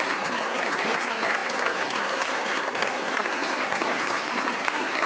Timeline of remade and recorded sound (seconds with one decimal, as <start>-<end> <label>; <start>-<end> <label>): 0.0-5.1 remade